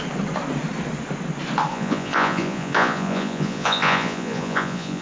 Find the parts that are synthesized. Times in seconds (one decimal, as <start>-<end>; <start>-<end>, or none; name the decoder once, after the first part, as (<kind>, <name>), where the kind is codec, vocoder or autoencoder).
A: 1.7-5.0 (vocoder, Vocos)